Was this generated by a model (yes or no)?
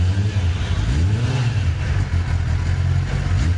no